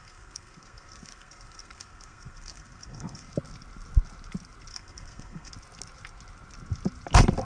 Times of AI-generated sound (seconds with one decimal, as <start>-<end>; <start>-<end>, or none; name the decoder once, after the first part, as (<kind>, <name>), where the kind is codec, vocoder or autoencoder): 0.0-3.3 (codec, SNAC); 4.7-5.5